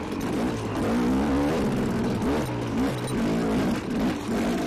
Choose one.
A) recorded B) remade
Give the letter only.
A